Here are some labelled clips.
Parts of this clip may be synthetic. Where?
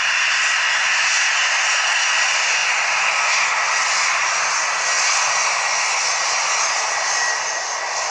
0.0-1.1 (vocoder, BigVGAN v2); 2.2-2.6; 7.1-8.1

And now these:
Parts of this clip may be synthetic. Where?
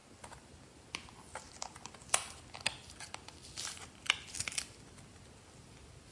none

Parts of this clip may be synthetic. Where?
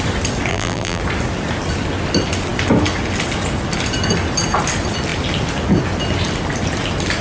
0.5-1.0 (vocoder, BigVGAN v2)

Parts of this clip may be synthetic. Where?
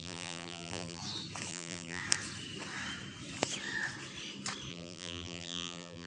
0.0-1.0 (vocoder, BigVGAN v2); 1.5-2.0; 4.7-6.1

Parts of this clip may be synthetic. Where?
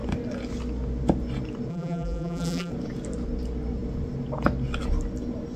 1.7-2.7 (vocoder, BigVGAN v2)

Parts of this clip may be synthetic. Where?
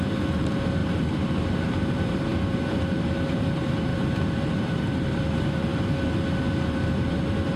0.0-5.7 (vocoder, BigVGAN v2); 6.7-7.6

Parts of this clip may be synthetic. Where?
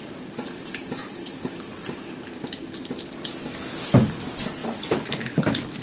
0.0-3.4 (vocoder, BigVGAN v2); 4.6-5.2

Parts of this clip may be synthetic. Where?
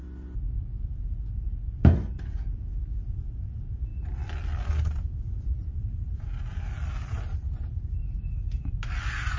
none